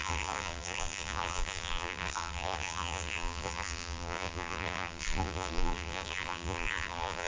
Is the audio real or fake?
fake